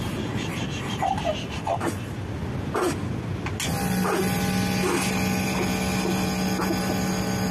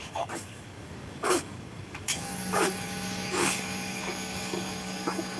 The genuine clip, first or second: first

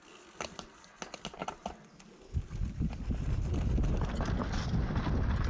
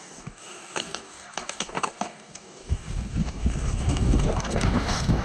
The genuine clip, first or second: first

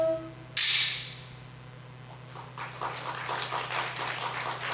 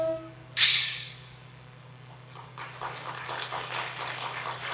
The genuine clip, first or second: first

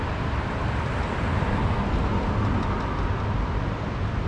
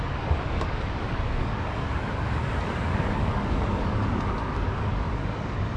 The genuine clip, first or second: first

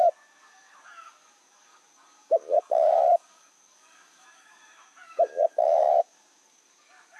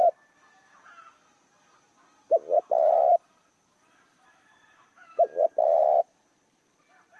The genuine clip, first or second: second